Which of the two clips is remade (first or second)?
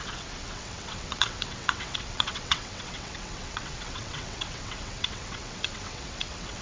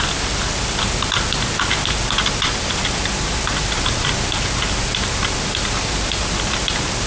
first